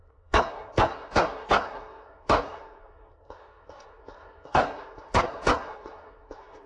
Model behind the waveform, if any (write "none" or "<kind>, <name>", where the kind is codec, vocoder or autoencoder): codec, SNAC